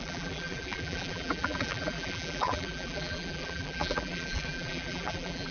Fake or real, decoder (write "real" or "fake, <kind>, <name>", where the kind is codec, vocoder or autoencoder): fake, vocoder, BigVGAN v2